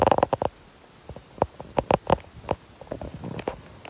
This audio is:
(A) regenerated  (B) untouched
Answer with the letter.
B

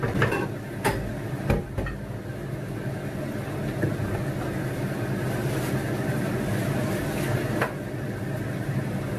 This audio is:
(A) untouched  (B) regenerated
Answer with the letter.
A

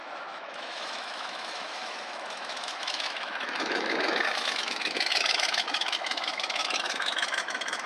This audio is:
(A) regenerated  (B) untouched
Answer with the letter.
A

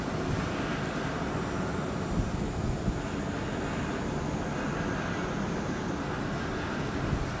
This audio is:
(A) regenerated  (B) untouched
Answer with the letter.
B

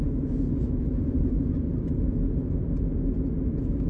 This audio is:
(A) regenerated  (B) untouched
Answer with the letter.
B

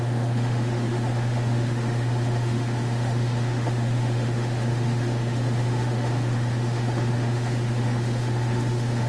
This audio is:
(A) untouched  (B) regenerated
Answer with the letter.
B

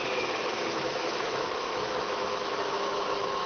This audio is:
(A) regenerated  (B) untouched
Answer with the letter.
A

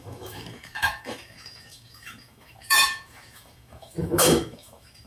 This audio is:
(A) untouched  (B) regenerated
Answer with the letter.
B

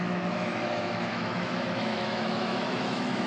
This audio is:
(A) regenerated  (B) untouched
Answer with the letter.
A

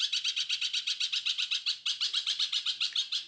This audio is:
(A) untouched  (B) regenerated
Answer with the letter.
A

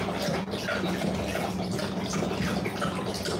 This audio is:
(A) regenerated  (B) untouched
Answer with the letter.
B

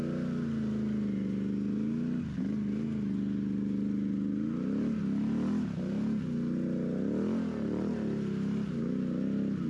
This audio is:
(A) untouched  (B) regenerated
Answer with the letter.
A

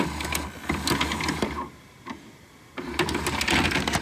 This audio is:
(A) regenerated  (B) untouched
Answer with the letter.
B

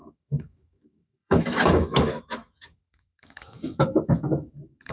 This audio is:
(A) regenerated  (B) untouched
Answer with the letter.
A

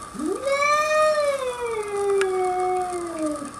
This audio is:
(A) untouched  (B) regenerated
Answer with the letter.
A